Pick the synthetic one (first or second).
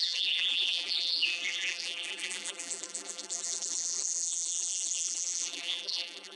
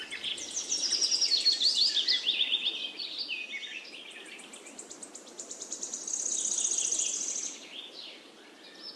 first